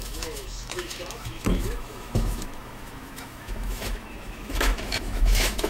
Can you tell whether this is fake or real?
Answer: fake